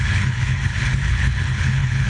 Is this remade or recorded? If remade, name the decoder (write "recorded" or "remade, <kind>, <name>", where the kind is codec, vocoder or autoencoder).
remade, codec, HILCodec